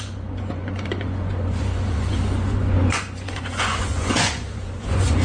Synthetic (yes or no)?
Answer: yes